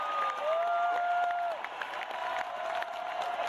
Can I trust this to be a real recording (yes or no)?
yes